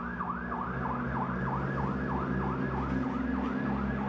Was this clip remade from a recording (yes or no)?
no